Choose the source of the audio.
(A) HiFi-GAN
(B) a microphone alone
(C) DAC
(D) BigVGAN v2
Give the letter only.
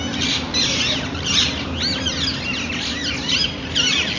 B